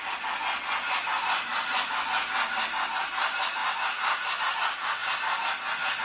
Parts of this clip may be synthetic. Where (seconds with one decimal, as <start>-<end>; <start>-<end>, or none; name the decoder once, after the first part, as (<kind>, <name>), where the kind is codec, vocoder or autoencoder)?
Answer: none